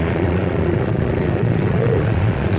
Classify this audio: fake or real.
fake